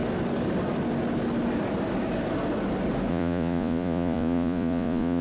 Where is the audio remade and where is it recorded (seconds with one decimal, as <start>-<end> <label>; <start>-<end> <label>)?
0.0-3.1 recorded; 3.1-5.2 remade